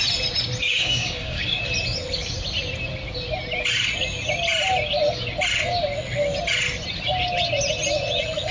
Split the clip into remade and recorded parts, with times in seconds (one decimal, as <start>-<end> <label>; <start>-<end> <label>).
0.0-0.6 recorded; 0.6-1.6 remade; 1.6-8.5 recorded